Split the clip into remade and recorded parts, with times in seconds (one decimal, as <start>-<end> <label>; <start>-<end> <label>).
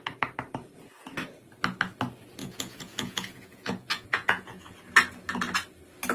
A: 0.0-2.4 recorded; 2.4-4.7 remade; 4.7-6.1 recorded